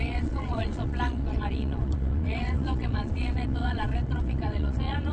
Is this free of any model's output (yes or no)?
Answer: no